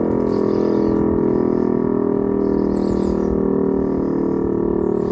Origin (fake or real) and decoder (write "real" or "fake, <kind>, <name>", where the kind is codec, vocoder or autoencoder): real